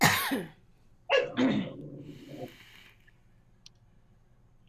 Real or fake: real